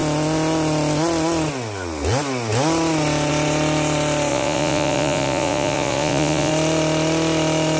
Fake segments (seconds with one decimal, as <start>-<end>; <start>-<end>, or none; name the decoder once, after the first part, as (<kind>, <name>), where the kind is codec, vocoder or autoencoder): 4.3-6.5 (vocoder, Vocos)